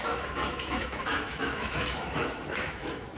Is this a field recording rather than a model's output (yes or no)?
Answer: no